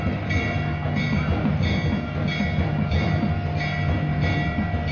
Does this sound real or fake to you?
real